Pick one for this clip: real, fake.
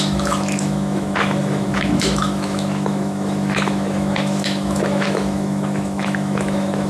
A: fake